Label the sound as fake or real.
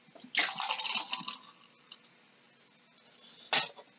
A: real